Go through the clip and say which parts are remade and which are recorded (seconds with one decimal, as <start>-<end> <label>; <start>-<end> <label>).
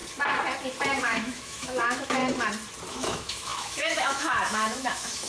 0.0-1.0 recorded; 1.0-2.2 remade; 2.2-2.9 recorded; 2.9-5.3 remade